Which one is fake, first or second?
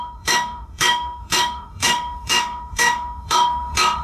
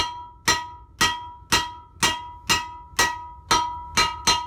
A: first